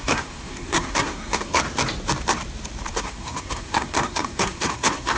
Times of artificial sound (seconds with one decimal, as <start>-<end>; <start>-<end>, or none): 0.0-1.6; 2.9-5.2